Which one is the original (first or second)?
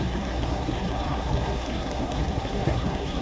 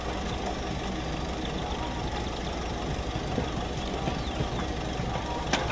second